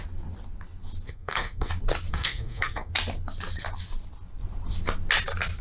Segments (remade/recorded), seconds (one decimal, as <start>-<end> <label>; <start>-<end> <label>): 0.0-1.1 recorded; 1.1-1.7 remade; 1.7-2.1 recorded; 2.1-2.9 remade; 2.9-5.6 recorded